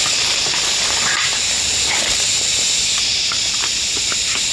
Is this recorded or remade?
recorded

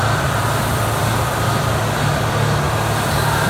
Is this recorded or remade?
remade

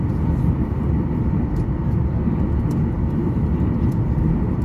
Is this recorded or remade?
recorded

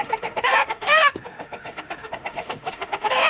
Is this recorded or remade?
remade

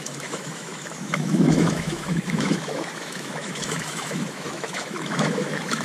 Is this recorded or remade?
remade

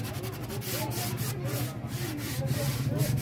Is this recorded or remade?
recorded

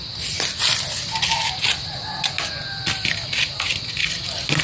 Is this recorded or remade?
recorded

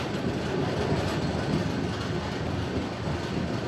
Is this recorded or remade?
recorded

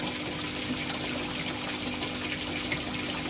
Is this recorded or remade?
recorded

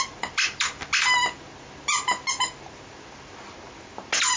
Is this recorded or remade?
recorded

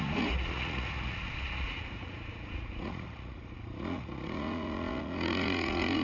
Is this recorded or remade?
remade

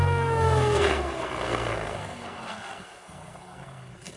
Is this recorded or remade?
remade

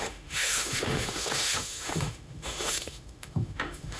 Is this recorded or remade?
remade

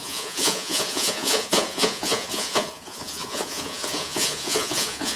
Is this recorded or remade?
remade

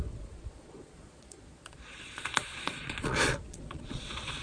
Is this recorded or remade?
remade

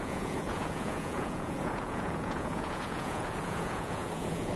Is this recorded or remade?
remade